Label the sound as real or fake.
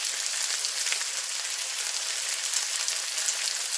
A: real